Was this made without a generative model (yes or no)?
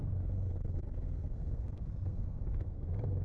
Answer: no